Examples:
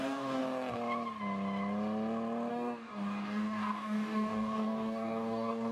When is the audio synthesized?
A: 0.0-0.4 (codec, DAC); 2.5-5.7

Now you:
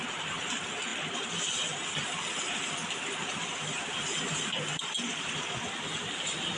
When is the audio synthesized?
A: none